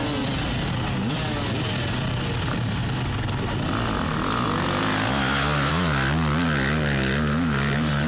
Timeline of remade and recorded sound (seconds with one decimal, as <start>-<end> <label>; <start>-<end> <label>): 0.0-8.1 recorded